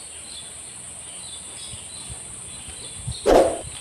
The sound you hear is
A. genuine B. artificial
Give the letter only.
A